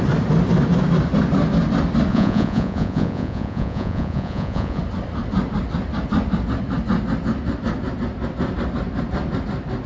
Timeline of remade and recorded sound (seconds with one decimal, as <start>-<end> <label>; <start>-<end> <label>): 0.0-2.1 recorded; 2.1-4.8 remade; 4.8-9.9 recorded